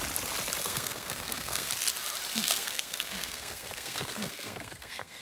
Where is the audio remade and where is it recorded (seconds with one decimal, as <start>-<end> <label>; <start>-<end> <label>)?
0.0-0.6 recorded; 0.6-1.7 remade; 1.7-2.3 recorded; 2.3-5.2 remade